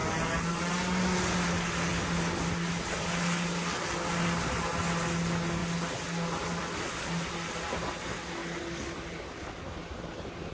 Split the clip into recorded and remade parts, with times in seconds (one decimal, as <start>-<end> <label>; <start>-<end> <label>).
0.0-10.5 recorded